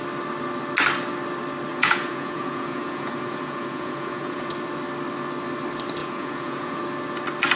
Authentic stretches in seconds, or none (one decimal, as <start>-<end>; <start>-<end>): 0.0-1.7; 4.5-6.0; 6.8-7.6